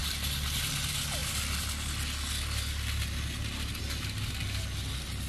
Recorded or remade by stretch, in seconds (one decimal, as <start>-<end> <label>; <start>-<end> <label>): 0.0-5.3 recorded